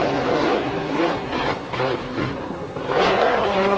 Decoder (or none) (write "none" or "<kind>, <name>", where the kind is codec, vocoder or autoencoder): codec, SNAC